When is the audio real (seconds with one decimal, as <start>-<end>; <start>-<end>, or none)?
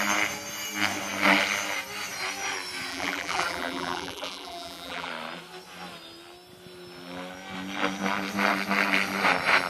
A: 0.0-2.9; 5.1-9.7